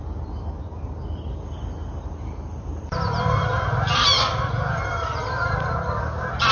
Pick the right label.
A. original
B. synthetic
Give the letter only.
A